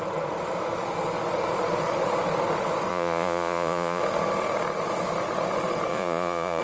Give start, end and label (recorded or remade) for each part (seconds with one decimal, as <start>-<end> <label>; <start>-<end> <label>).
0.0-2.9 recorded; 2.9-4.0 remade; 4.0-5.9 recorded; 5.9-6.6 remade